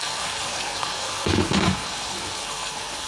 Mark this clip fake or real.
fake